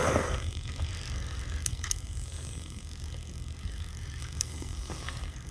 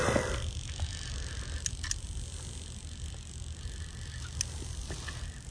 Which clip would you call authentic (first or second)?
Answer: second